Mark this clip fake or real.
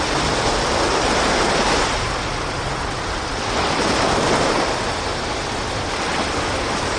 real